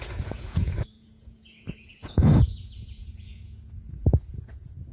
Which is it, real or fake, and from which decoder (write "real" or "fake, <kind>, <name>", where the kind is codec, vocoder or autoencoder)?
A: fake, vocoder, Vocos